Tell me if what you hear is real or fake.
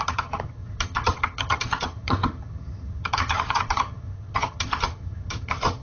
fake